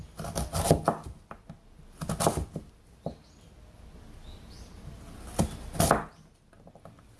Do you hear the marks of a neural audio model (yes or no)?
no